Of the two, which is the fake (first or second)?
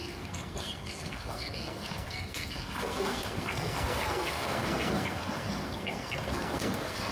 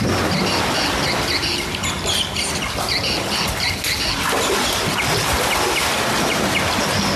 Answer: first